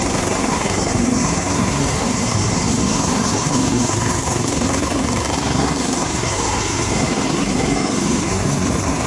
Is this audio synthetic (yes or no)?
yes